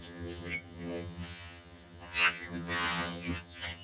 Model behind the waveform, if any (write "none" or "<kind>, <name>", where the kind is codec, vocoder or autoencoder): vocoder, HiFi-GAN